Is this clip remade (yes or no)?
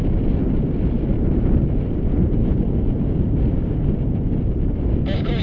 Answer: no